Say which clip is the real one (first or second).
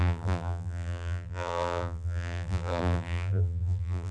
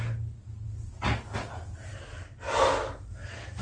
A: second